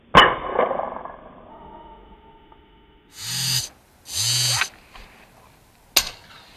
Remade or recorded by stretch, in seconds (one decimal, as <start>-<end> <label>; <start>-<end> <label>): 0.0-1.5 recorded; 1.5-3.6 remade; 3.6-6.6 recorded